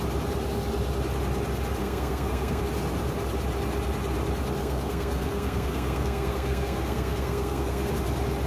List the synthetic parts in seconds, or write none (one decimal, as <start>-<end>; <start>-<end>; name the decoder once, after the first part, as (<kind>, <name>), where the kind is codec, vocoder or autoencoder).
1.8-2.6 (codec, SNAC); 4.6-7.9